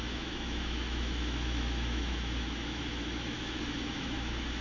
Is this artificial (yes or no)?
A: yes